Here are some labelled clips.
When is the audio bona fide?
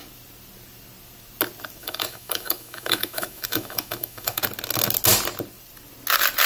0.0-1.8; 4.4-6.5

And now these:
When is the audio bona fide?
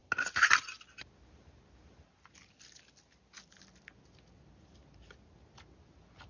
0.0-6.3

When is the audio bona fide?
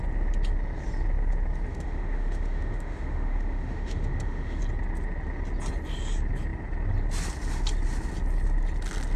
0.0-1.7; 4.6-9.2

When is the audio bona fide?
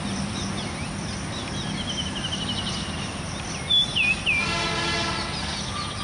0.0-6.0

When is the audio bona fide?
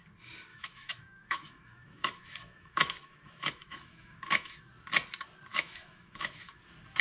0.0-0.5; 4.7-5.5; 6.6-7.0